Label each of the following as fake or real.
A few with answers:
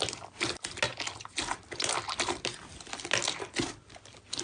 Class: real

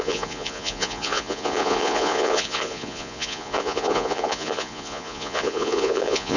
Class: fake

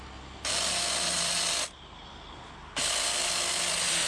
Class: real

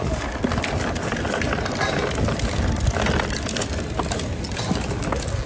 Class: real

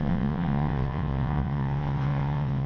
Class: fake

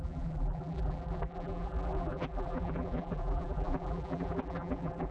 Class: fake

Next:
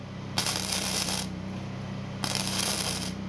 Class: fake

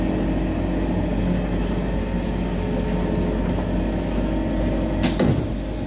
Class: real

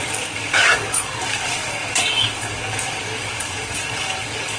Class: fake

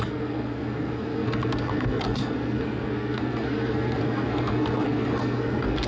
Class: fake